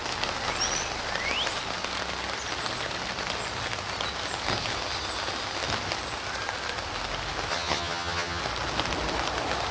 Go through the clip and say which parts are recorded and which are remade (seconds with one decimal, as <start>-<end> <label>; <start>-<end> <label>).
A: 0.0-7.5 recorded; 7.5-8.4 remade; 8.4-9.7 recorded